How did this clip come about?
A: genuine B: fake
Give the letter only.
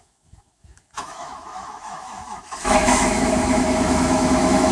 B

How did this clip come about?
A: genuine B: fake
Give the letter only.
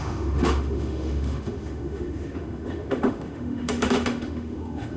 B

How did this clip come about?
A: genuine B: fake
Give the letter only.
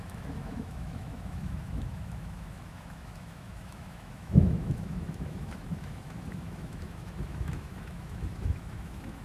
B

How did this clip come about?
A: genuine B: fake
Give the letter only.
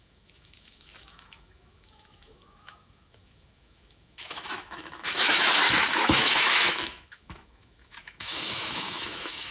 B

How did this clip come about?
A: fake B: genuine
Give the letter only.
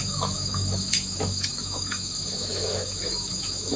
A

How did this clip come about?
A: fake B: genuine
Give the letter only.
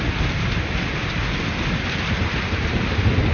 B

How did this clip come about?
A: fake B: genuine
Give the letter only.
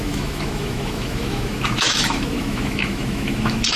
A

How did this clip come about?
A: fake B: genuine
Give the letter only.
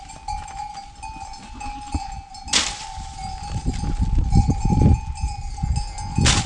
B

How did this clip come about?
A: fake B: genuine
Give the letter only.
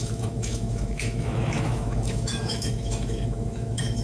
A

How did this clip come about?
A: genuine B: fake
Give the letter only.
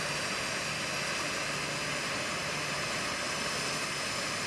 A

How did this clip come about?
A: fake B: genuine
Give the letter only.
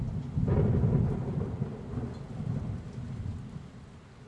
B